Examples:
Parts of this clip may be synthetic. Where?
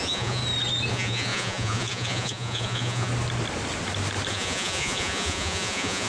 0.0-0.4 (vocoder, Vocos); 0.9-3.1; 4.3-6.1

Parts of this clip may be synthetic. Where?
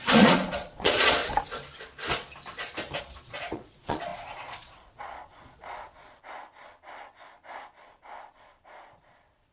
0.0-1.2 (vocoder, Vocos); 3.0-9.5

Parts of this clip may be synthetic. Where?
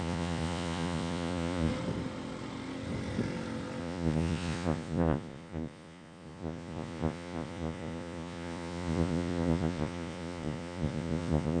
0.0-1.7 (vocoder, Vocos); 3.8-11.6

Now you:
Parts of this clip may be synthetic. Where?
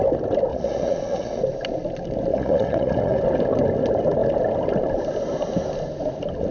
0.5-1.4 (vocoder, Vocos); 2.3-3.2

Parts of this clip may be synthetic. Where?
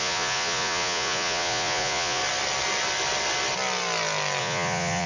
0.0-2.2 (vocoder, Vocos); 4.4-5.1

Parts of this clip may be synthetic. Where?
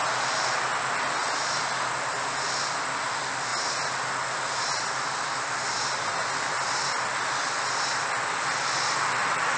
none